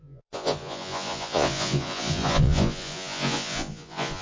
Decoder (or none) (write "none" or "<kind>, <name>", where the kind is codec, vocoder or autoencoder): vocoder, Vocos